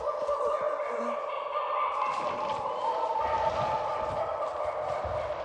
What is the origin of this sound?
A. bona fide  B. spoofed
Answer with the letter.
A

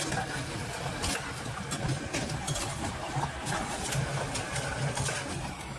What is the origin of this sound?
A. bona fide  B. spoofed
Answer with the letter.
A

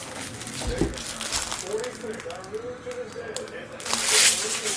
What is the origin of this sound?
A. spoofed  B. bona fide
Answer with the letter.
B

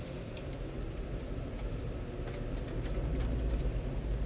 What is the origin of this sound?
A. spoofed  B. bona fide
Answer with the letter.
B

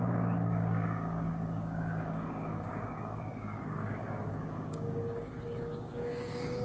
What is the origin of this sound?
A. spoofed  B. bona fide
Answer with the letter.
A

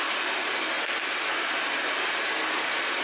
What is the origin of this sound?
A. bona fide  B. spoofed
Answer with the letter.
A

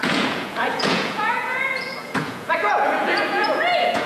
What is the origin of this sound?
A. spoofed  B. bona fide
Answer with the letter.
A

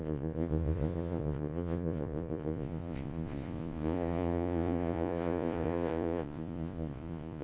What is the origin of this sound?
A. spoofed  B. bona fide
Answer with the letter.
A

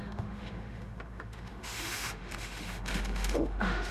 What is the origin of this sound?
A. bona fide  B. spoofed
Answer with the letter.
B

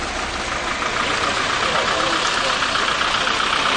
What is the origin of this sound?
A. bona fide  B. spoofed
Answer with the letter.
A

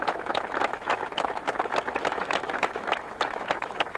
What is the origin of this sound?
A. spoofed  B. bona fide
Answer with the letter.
A